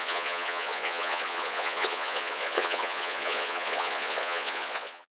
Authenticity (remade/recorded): remade